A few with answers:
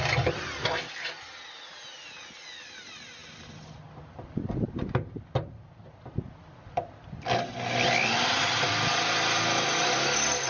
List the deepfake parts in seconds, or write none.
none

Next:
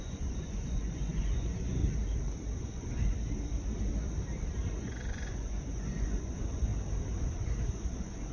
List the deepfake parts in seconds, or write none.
0.0-1.8 (vocoder, Vocos); 2.6-3.1; 4.7-6.7; 7.2-8.3

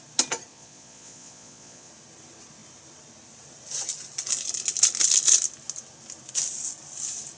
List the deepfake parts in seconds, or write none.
0.5-1.9 (vocoder, Vocos)

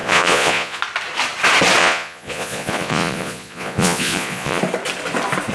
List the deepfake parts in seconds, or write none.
0.0-0.8 (vocoder, Vocos); 1.8-4.6

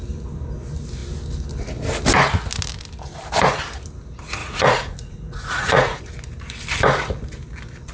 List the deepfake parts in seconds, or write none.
4.4-6.0 (vocoder, Vocos)

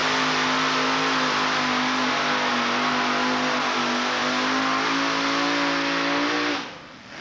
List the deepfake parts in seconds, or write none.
none

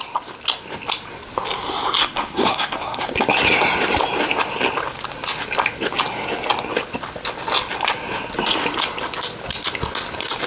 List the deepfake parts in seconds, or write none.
2.0-3.0 (codec, SNAC)

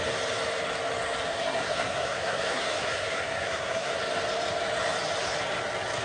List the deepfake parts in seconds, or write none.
1.3-4.0 (codec, SNAC)